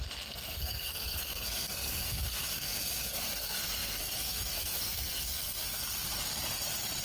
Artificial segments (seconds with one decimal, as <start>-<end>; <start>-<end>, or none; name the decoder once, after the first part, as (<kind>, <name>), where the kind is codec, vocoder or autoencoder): 0.0-5.8 (codec, SNAC)

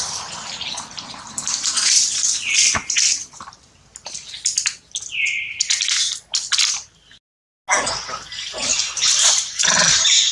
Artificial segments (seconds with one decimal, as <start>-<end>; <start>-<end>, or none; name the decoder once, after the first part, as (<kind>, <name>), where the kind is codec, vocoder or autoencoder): 3.1-3.7 (vocoder, BigVGAN v2); 8.6-10.3

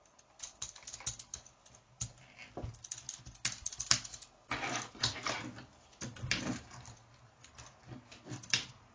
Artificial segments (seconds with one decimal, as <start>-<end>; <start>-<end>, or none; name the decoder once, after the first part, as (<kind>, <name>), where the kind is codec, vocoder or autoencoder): none